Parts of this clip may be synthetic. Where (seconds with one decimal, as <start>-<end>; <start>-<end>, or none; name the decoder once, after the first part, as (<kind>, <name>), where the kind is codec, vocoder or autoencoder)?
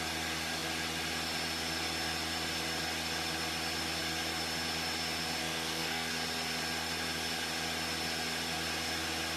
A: 5.4-6.1 (codec, SNAC)